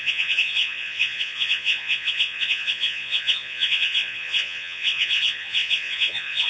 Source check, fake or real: fake